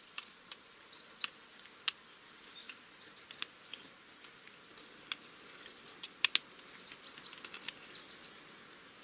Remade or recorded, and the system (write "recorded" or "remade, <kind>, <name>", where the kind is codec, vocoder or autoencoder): recorded